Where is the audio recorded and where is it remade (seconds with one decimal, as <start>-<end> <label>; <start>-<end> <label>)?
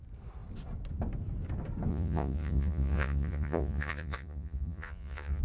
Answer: 0.0-1.9 recorded; 1.9-5.4 remade